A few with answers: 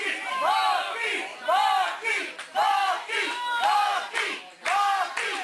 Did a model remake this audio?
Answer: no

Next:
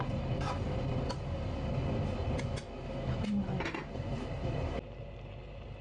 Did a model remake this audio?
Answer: no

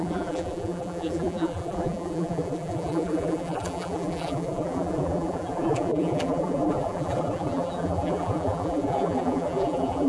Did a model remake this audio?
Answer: yes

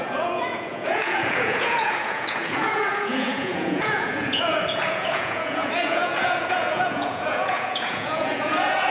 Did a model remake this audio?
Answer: yes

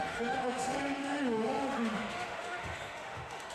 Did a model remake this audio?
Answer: yes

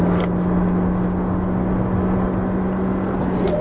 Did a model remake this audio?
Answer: no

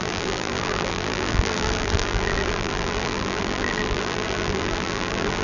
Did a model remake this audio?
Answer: yes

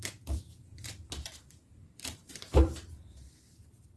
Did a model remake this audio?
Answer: yes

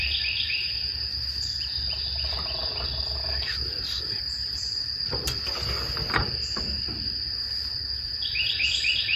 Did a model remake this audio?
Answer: no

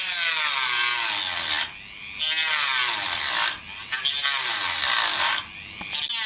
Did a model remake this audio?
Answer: no